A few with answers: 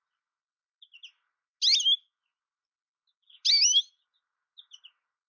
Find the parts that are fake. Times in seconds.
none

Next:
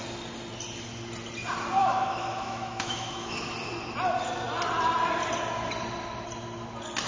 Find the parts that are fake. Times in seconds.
1.8-3.5

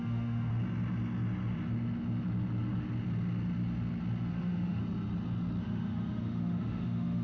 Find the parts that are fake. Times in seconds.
0.0-0.5; 4.3-4.8; 5.6-7.2

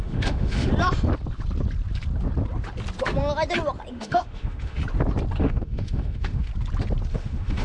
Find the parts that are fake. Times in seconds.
0.0-0.7; 3.9-4.8; 5.4-6.5; 7.1-7.6

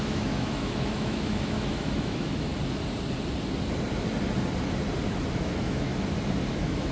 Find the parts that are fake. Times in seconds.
0.0-2.5; 5.4-5.9; 6.5-6.9

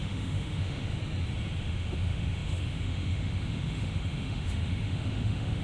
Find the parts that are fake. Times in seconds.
0.0-1.0; 1.6-5.6